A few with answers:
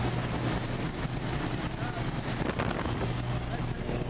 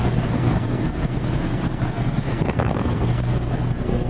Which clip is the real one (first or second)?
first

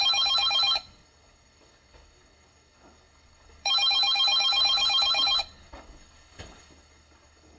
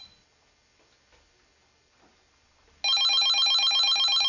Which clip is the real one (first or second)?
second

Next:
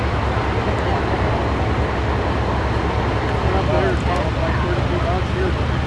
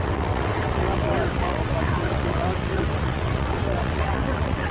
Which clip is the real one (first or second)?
first